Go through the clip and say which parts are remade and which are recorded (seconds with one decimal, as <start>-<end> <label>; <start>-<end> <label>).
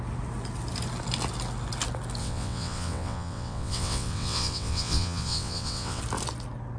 0.0-2.2 recorded; 2.2-6.0 remade; 6.0-6.8 recorded